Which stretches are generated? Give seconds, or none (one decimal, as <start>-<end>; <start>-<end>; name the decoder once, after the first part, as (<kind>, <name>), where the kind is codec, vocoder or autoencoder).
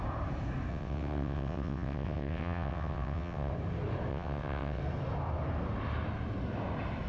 0.7-3.5 (vocoder, WaveNeXt); 4.1-4.8